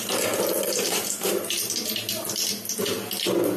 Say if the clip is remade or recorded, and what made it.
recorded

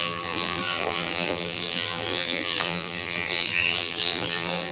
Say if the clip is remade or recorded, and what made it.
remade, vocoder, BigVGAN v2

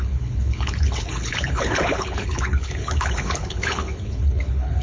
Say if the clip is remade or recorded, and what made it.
remade, codec, HILCodec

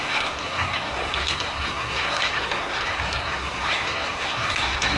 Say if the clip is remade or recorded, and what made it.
remade, codec, SNAC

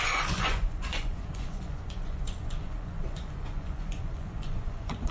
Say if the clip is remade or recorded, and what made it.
remade, vocoder, Vocos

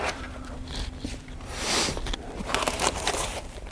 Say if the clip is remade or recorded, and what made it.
remade, vocoder, BigVGAN v2